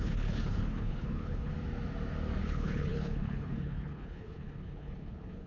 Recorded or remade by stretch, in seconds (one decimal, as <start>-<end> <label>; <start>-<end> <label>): 0.0-1.5 remade; 1.5-2.4 recorded; 2.4-5.5 remade